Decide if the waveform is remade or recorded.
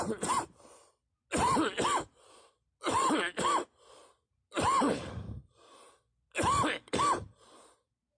recorded